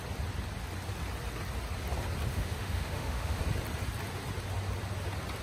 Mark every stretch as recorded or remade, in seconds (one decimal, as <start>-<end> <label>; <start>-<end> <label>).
0.0-2.3 recorded; 2.3-3.4 remade; 3.4-5.4 recorded